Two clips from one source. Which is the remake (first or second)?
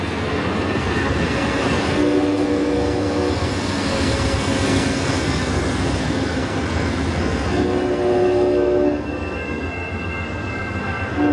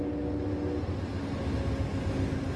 first